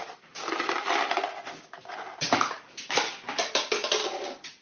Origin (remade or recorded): recorded